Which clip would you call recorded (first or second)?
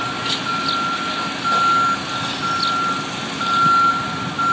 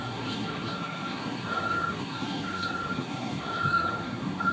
first